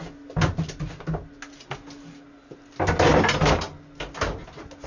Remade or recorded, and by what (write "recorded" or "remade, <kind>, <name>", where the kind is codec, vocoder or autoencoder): recorded